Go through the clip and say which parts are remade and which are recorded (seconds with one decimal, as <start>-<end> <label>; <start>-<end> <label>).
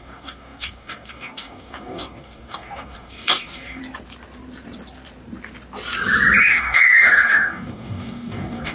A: 0.0-3.8 remade; 3.8-6.4 recorded; 6.4-8.7 remade